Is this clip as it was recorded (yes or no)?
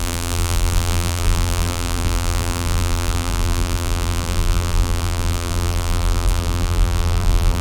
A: no